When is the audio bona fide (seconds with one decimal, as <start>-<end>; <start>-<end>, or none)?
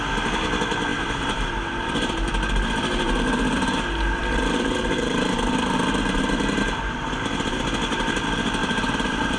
0.0-0.9; 2.3-2.9; 7.6-8.6